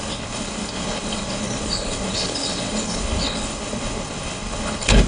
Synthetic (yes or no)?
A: yes